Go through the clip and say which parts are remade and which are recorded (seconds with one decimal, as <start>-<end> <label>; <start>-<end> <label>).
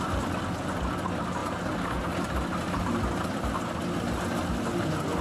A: 0.0-5.2 recorded